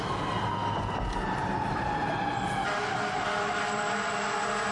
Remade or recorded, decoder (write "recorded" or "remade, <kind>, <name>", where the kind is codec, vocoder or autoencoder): recorded